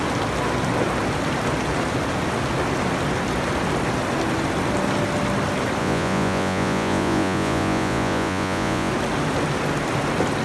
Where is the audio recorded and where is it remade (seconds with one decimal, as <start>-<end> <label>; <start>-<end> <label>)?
0.0-5.8 recorded; 5.8-8.9 remade; 8.9-10.4 recorded